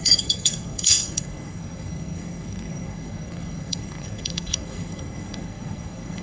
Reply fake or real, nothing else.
fake